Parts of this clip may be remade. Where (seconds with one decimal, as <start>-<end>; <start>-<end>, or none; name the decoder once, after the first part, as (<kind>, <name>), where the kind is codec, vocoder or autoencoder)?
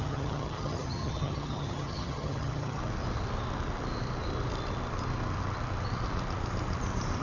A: 0.0-2.8 (vocoder, HiFi-GAN)